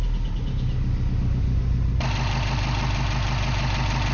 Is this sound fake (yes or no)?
no